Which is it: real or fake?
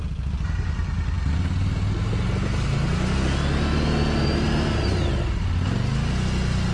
real